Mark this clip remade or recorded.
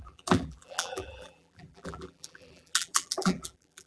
remade